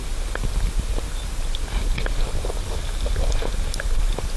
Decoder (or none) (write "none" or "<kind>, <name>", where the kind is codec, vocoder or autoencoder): none